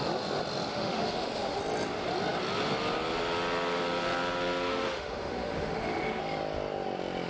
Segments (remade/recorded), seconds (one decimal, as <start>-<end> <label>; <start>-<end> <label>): 0.0-0.7 recorded; 0.7-1.6 remade; 1.6-4.7 recorded; 4.7-6.2 remade; 6.2-7.3 recorded